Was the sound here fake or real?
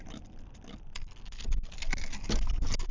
real